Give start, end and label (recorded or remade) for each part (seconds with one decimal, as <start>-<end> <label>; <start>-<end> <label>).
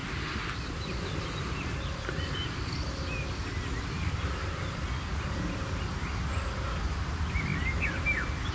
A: 0.0-8.5 recorded